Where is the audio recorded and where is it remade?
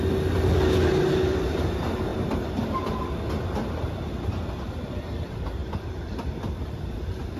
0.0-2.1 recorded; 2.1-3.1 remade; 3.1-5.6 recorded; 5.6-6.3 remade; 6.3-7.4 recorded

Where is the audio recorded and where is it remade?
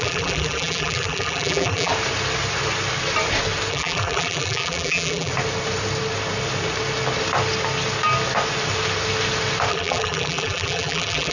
0.0-1.9 remade; 1.9-3.7 recorded; 3.7-5.3 remade; 5.3-9.7 recorded; 9.7-11.3 remade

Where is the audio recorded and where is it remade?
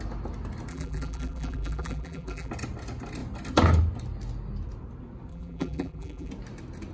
0.0-0.7 recorded; 0.7-2.5 remade; 2.5-5.3 recorded; 5.3-6.3 remade; 6.3-6.9 recorded